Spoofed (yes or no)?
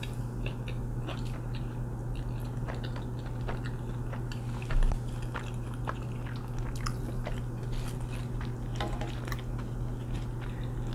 no